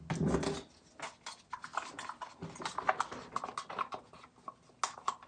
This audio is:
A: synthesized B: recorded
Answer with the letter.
B